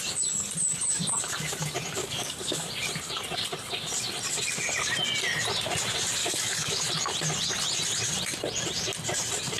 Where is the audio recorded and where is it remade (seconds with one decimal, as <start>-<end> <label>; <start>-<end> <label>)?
0.0-2.0 recorded; 2.0-2.7 remade; 2.7-6.2 recorded; 6.2-6.9 remade; 6.9-9.6 recorded